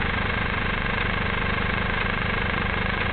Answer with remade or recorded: remade